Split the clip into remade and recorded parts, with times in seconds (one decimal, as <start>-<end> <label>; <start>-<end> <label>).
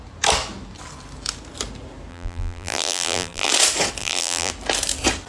0.0-2.1 recorded; 2.1-3.5 remade; 3.5-4.0 recorded; 4.0-4.5 remade; 4.5-5.3 recorded